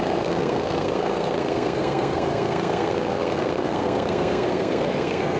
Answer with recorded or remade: remade